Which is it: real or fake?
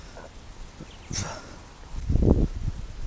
real